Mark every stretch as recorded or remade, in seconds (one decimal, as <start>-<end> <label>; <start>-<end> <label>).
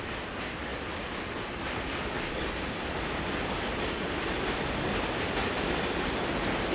0.0-6.7 recorded